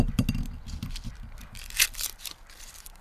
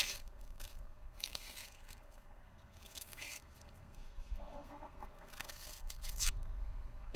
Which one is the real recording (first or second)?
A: first